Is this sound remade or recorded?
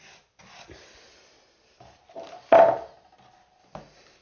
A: recorded